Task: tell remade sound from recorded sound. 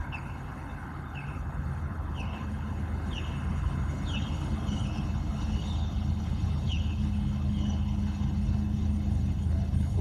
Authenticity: remade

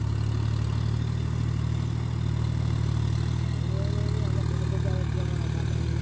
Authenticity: recorded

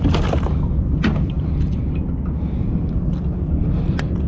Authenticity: recorded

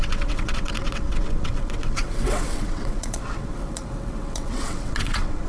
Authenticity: remade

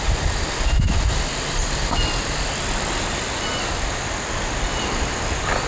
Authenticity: remade